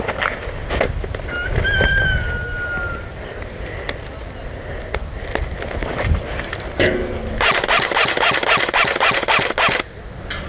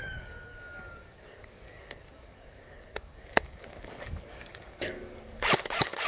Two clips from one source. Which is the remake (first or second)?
second